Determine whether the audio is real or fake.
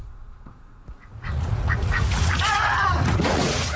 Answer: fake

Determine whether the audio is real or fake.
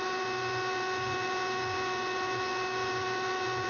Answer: fake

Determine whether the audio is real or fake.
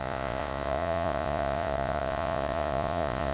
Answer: fake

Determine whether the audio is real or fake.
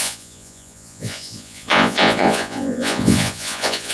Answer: fake